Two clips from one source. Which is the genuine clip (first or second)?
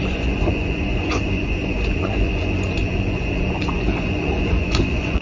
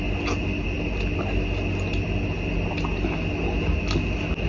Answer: second